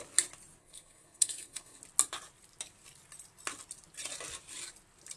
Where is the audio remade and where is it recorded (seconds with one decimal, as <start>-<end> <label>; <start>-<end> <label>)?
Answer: 0.0-0.6 recorded; 0.6-1.8 remade; 1.8-5.2 recorded